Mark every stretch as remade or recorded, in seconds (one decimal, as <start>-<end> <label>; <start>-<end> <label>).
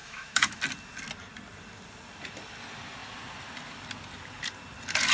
0.0-0.6 remade; 0.6-5.1 recorded